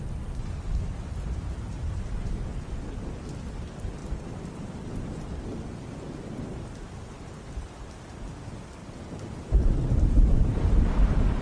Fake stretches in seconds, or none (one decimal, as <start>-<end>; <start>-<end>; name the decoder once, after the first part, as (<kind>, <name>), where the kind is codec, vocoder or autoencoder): none